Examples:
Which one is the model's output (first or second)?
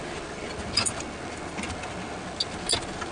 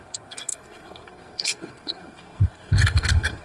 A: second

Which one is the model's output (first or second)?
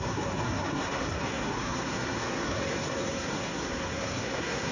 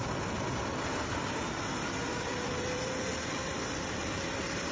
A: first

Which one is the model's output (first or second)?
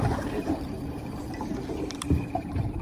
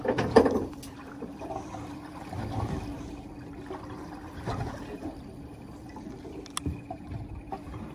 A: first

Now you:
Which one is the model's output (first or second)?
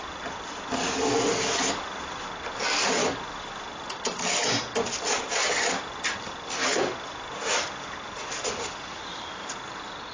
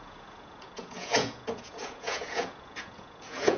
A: second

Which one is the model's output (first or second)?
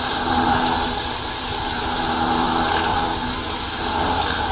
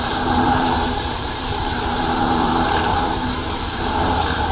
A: second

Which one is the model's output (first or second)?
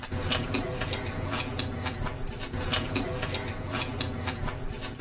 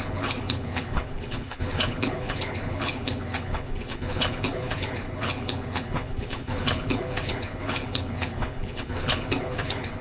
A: second